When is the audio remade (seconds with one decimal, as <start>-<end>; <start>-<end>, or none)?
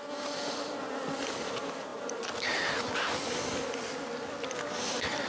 none